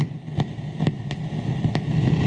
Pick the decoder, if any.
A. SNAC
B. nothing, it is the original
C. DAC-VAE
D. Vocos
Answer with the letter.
B